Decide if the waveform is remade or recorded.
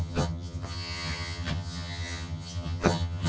remade